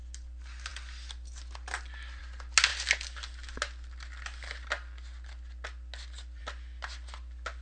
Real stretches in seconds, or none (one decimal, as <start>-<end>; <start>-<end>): 0.0-7.6